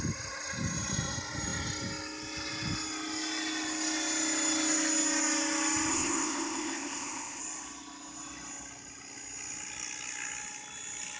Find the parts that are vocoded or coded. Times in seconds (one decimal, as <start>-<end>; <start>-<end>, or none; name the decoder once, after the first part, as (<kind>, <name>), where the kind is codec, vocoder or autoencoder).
5.9-7.4 (codec, ZipCodec)